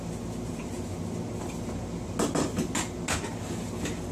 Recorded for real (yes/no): yes